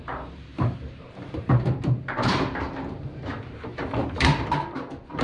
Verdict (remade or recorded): remade